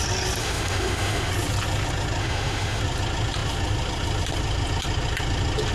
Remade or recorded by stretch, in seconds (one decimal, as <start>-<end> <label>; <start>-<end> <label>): 0.0-0.4 recorded; 0.4-1.3 remade; 1.3-2.2 recorded; 2.2-2.8 remade; 2.8-5.7 recorded